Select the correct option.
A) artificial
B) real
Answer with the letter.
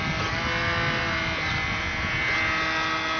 B